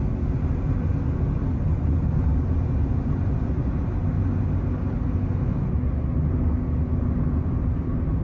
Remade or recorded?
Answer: recorded